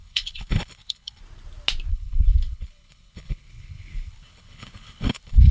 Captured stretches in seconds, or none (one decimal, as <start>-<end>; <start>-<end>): 1.2-1.9